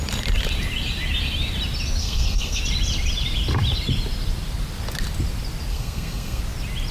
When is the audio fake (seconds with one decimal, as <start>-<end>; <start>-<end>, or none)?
2.0-2.6; 5.7-6.4